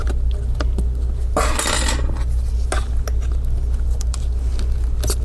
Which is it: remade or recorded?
recorded